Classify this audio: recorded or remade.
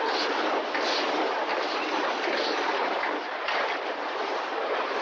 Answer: recorded